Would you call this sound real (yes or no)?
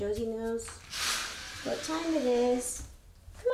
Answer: yes